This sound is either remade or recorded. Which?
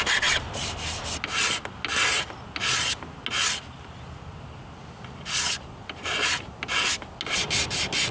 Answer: recorded